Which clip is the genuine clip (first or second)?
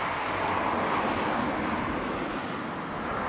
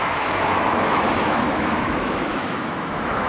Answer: first